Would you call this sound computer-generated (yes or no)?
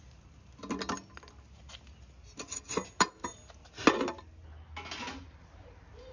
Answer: no